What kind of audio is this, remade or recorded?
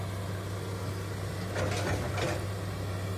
recorded